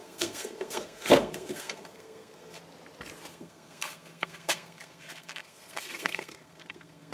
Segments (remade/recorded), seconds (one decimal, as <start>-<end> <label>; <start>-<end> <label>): 0.0-2.6 remade; 2.6-3.3 recorded; 3.3-7.1 remade